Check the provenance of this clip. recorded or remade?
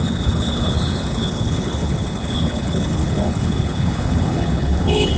remade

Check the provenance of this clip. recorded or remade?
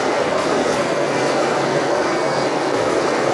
remade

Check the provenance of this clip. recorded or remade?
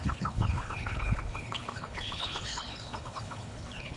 remade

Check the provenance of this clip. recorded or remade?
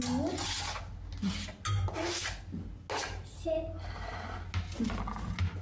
recorded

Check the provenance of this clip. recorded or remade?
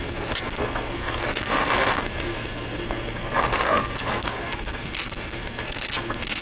remade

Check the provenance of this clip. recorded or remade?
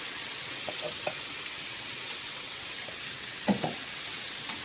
remade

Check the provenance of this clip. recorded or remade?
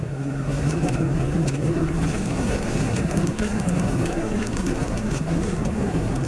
remade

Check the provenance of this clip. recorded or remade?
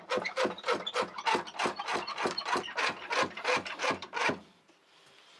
remade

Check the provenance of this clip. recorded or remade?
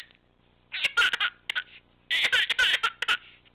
recorded